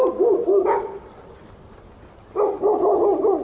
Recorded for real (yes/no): yes